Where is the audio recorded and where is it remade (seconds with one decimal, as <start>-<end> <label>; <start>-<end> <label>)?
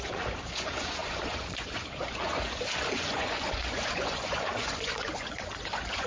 0.0-6.1 remade